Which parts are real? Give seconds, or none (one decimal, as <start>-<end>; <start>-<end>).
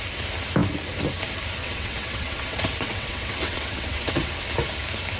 0.0-1.6; 4.3-5.2